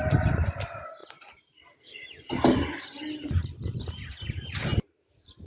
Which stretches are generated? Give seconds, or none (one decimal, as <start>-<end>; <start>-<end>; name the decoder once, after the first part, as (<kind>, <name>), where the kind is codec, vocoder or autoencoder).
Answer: none